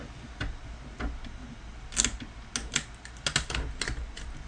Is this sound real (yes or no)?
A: yes